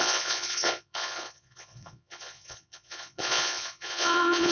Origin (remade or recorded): remade